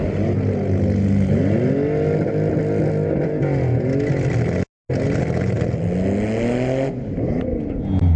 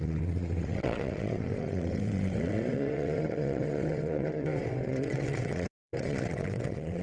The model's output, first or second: second